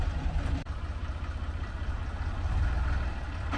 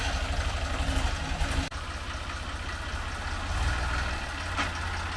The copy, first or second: first